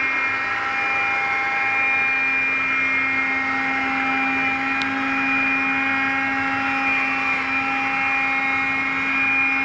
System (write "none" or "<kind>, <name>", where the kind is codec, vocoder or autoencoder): none